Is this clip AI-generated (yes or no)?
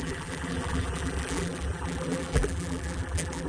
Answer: yes